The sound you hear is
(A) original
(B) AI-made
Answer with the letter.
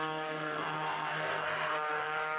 B